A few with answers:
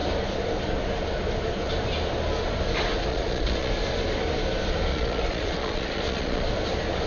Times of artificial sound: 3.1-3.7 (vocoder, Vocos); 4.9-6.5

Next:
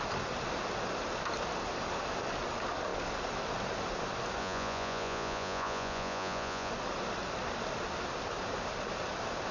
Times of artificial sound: 4.4-6.7 (vocoder, Vocos)

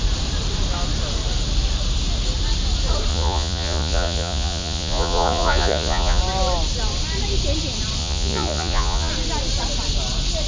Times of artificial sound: 3.1-6.2 (vocoder, Vocos); 8.0-9.1

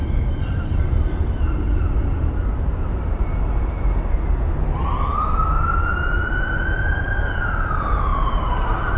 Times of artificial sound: 8.1-9.0 (vocoder, BigVGAN v2)